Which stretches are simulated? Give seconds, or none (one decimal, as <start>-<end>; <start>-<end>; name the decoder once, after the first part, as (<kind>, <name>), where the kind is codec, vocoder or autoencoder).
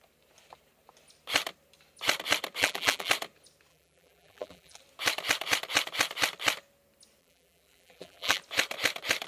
2.6-3.1 (vocoder, BigVGAN v2); 3.7-4.8; 7.2-8.4